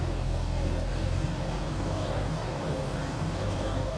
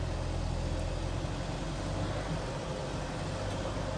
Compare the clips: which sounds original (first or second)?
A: second